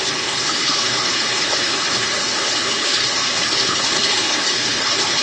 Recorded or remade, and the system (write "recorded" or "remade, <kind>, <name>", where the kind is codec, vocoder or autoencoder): remade, codec, HILCodec